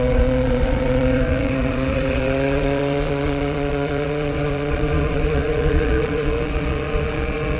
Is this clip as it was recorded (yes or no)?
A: no